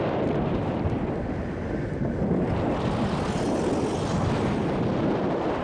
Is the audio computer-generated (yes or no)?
no